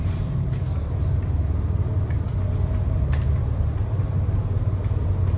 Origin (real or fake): real